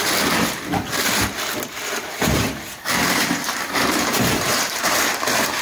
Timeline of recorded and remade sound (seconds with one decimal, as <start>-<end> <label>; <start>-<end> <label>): 0.0-2.2 recorded; 2.2-5.6 remade